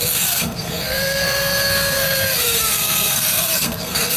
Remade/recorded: remade